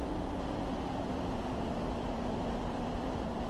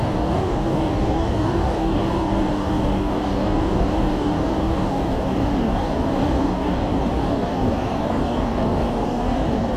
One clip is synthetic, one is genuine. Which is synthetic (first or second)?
second